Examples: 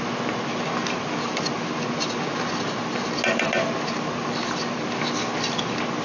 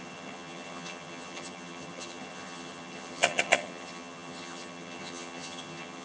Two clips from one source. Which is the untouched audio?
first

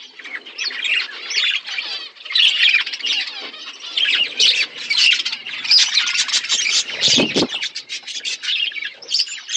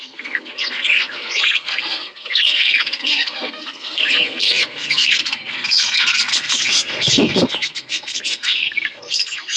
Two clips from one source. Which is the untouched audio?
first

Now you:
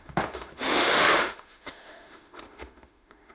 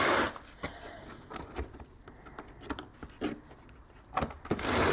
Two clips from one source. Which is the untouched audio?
second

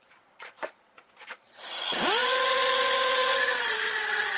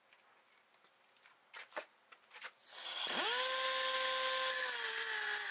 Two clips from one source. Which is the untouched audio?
second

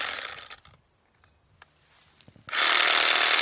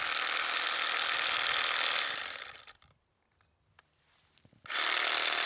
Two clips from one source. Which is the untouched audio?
first